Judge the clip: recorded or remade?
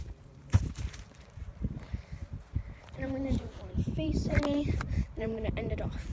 remade